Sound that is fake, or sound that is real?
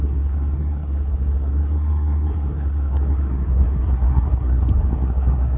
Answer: fake